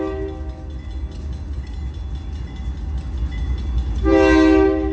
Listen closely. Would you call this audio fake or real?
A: real